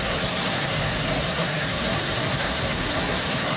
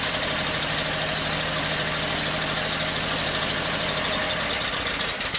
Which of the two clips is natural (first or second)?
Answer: second